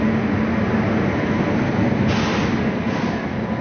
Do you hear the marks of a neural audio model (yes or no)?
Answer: no